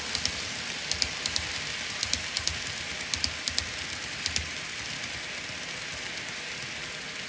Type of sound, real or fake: real